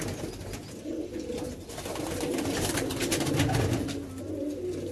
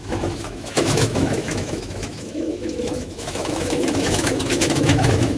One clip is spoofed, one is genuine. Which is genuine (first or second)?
first